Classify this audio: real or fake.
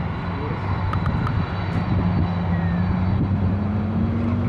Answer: real